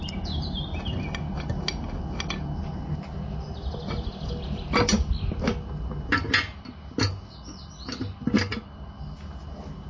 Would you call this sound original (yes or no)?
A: yes